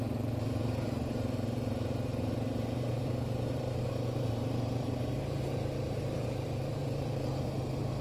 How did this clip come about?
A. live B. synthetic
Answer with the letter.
B